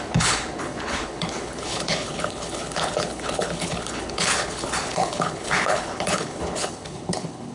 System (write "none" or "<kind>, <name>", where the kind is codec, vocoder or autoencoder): codec, HILCodec